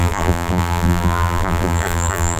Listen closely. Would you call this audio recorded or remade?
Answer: remade